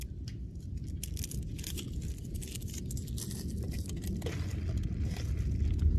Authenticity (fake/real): real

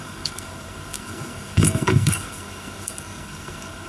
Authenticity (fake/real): fake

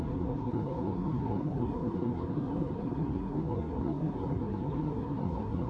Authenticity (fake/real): fake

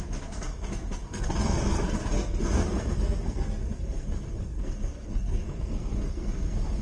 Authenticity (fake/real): fake